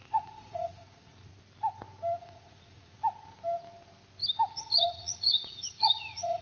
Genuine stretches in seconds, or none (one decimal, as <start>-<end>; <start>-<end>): 1.3-2.2; 3.0-4.6